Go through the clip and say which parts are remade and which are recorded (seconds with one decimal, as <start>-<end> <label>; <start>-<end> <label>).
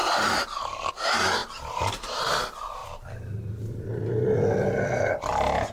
0.0-1.4 recorded; 1.4-2.2 remade; 2.2-2.8 recorded; 2.8-3.8 remade; 3.8-5.7 recorded